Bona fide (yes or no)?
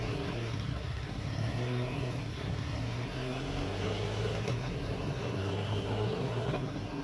no